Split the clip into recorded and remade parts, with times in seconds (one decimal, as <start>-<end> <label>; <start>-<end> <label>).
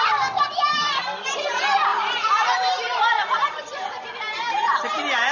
0.0-1.9 recorded; 1.9-5.3 remade